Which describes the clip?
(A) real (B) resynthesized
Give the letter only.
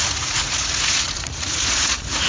B